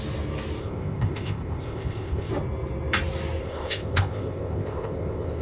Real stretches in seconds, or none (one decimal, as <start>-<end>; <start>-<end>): 0.0-0.6; 2.3-3.4

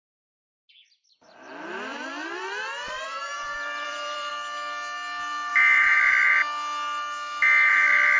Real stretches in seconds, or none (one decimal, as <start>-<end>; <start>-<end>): 0.0-1.9; 4.3-5.5; 6.2-8.2

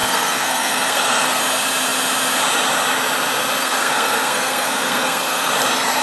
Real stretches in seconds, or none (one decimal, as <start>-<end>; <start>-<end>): 1.4-3.6; 5.5-6.0

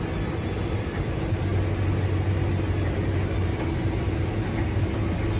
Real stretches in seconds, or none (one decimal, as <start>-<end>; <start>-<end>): 0.0-5.4